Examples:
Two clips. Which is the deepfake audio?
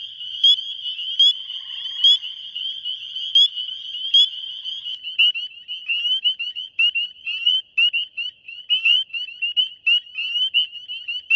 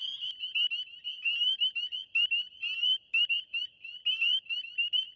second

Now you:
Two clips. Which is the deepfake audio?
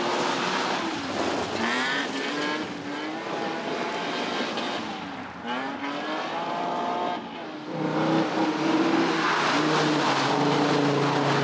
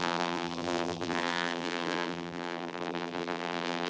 second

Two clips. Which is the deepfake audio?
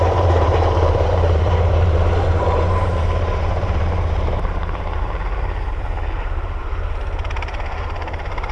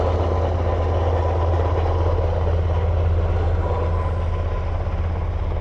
first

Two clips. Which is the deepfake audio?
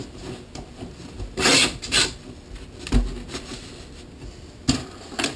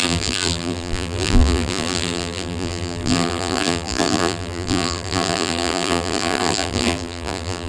second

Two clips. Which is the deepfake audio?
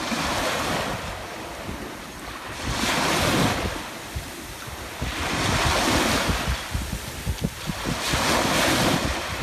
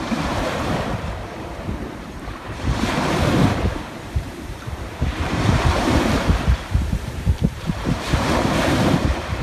second